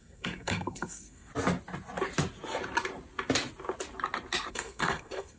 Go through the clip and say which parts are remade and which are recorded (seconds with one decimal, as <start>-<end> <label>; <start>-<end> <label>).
0.0-1.3 remade; 1.3-4.5 recorded; 4.5-5.4 remade